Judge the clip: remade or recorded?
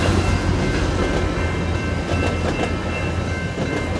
recorded